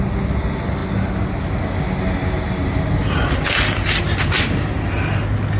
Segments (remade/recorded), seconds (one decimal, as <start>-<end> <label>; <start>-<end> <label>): 0.0-5.6 recorded